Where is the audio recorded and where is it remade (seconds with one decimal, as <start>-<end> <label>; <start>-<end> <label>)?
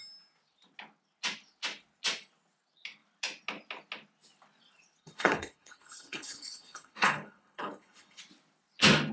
0.0-5.0 recorded; 5.0-8.2 remade; 8.2-9.1 recorded